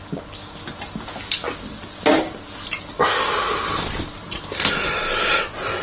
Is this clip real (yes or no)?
yes